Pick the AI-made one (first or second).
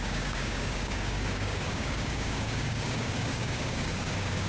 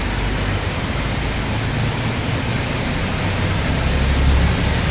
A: first